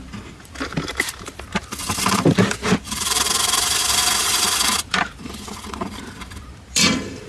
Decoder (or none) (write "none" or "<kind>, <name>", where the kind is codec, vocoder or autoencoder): vocoder, BigVGAN v2